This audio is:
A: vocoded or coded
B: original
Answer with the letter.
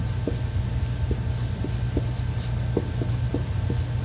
B